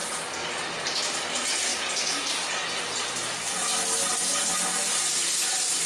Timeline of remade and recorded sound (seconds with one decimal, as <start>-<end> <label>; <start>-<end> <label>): 0.0-5.9 recorded